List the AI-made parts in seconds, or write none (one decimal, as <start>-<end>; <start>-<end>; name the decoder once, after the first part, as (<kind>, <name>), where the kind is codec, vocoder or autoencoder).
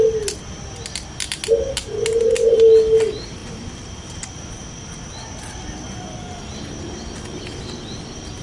none